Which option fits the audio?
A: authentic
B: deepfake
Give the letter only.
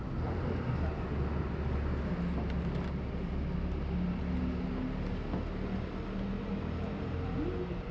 A